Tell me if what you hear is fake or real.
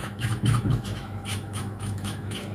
fake